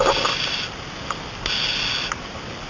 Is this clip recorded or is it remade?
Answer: recorded